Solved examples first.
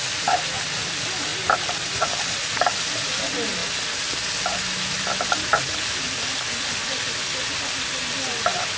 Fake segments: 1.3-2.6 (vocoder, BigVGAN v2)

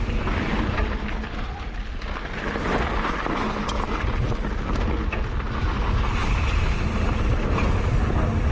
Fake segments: 6.2-7.7 (vocoder, BigVGAN v2)

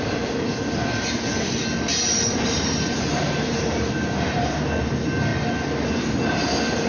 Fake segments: 1.9-4.7 (vocoder, BigVGAN v2)